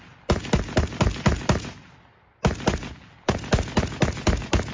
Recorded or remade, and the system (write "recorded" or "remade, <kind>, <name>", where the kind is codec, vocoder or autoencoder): recorded